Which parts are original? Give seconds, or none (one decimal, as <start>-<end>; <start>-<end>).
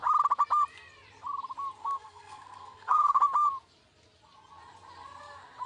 0.0-1.8; 3.2-5.7